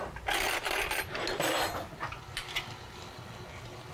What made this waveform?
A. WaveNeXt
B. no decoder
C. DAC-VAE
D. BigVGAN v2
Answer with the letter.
B